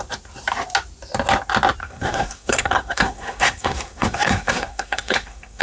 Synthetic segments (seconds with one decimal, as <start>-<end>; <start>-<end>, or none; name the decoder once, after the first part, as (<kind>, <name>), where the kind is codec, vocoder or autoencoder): 1.8-5.6 (codec, SNAC)